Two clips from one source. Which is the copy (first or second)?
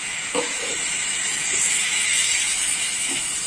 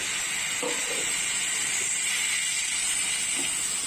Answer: first